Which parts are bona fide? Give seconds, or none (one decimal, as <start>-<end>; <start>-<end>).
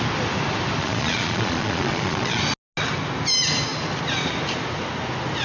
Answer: 0.0-0.8; 2.4-5.4